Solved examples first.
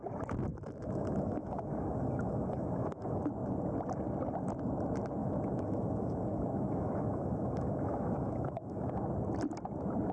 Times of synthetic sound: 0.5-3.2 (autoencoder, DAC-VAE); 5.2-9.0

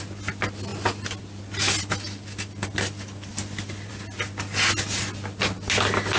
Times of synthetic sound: none

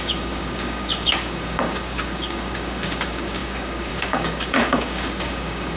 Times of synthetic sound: 0.0-5.8 (codec, DAC)

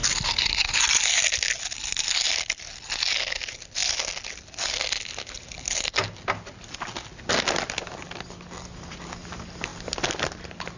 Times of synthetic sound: none

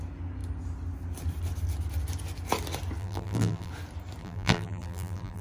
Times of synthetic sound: 3.0-3.7 (vocoder, BigVGAN v2); 4.2-5.4

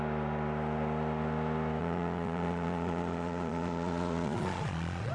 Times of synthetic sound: 1.8-5.1 (vocoder, Vocos)